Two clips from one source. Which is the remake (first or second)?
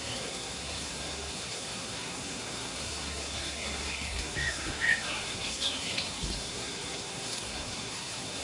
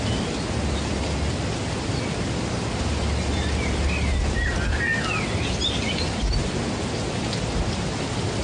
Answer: first